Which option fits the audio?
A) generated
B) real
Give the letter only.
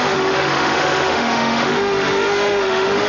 A